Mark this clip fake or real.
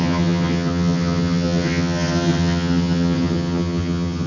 fake